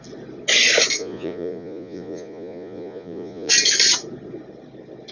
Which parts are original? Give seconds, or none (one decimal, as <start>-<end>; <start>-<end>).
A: 0.0-1.0; 3.5-5.1